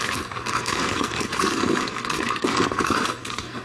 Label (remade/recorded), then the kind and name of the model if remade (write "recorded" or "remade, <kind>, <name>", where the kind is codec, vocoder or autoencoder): remade, codec, SNAC